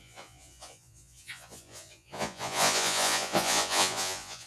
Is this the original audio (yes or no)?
no